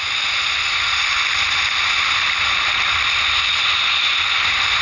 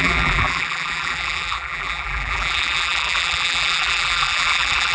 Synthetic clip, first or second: second